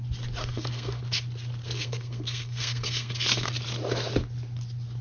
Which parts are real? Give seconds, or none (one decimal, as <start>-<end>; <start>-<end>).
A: 0.0-0.4; 1.0-1.6; 3.5-5.0